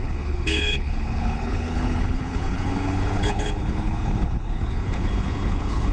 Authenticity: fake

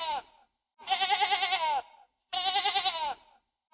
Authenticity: real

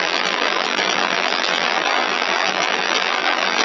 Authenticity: fake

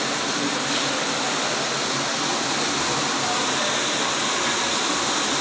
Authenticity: real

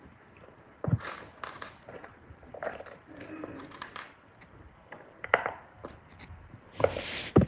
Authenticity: fake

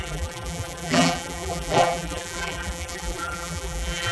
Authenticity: fake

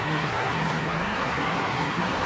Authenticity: fake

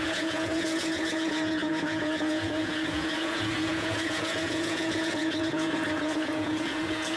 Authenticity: fake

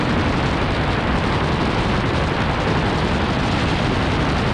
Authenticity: real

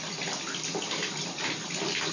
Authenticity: real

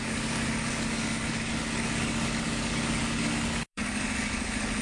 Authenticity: fake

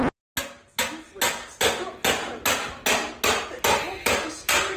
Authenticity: real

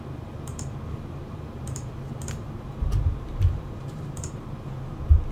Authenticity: fake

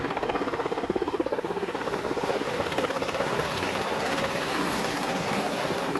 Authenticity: fake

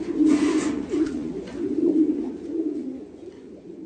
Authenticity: fake